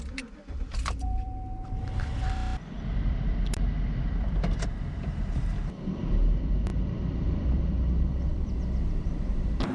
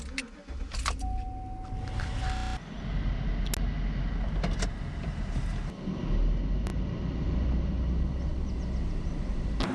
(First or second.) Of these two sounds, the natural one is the second